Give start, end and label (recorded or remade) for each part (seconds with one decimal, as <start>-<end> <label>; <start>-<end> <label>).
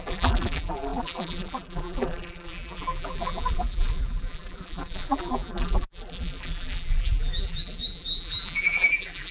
0.0-9.3 remade